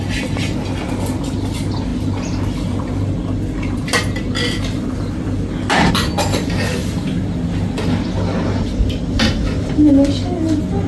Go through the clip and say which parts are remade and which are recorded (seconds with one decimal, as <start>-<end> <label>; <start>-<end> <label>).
0.0-10.9 recorded